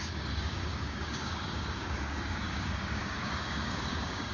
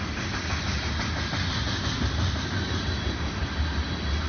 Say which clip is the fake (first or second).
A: first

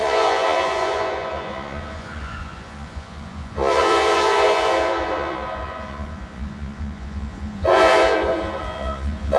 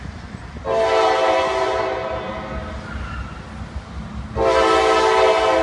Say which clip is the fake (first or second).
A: first